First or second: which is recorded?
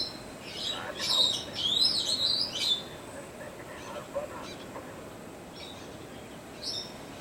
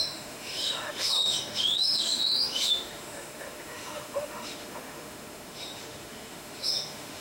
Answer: first